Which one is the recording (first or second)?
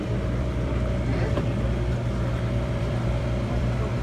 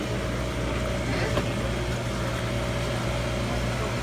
second